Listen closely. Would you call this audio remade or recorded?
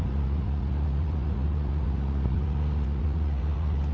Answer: remade